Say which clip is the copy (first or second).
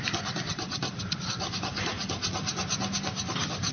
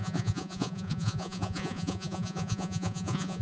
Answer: second